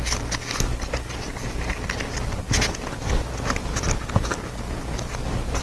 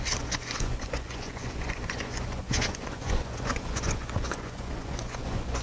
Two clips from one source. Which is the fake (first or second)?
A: second